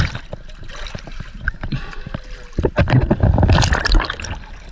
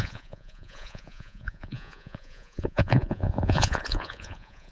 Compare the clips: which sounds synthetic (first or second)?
second